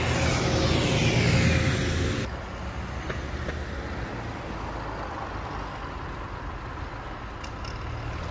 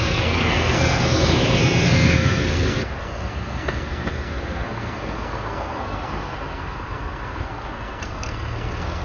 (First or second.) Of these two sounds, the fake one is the second